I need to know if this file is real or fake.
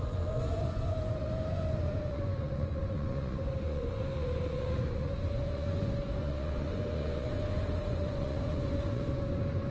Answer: fake